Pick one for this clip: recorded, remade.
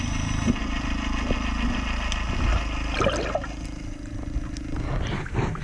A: recorded